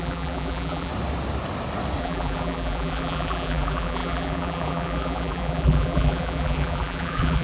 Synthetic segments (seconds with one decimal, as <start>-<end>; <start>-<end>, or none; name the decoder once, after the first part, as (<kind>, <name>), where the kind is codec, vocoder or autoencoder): 0.0-0.9 (vocoder, BigVGAN v2); 2.0-7.4